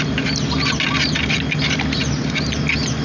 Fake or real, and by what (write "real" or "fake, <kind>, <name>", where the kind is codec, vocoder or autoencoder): real